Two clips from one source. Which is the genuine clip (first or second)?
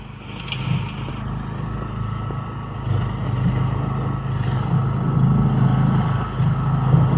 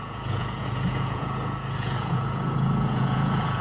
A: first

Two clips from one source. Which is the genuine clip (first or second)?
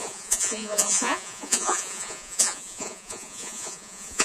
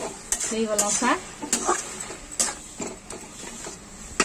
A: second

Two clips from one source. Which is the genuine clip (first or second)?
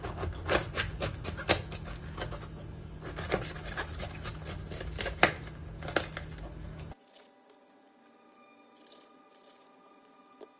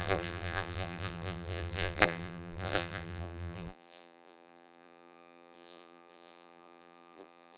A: first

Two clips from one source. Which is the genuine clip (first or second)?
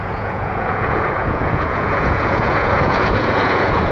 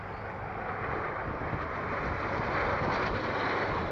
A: second